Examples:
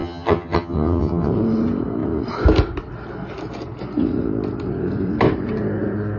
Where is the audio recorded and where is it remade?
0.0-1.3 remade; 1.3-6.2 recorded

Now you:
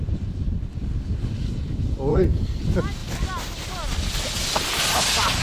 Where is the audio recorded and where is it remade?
0.0-2.1 recorded; 2.1-2.6 remade; 2.6-5.4 recorded

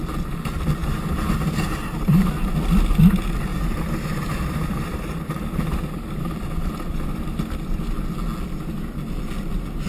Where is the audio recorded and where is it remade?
0.0-0.8 recorded; 0.8-2.3 remade; 2.3-3.5 recorded; 3.5-6.7 remade; 6.7-9.9 recorded

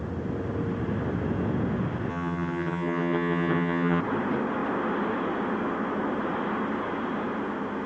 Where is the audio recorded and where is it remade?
0.0-2.1 recorded; 2.1-4.0 remade; 4.0-7.9 recorded